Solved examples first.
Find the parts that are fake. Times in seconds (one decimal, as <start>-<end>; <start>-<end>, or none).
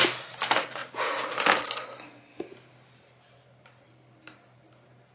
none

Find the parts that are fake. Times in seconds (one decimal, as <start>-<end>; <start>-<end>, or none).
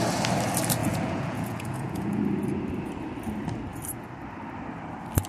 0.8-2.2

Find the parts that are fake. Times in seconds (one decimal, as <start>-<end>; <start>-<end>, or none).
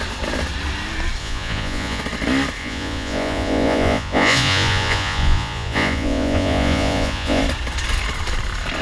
1.2-2.0; 2.6-7.4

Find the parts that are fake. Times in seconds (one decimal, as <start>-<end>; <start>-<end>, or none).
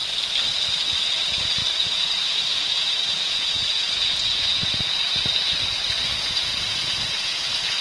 1.6-5.1; 6.1-7.8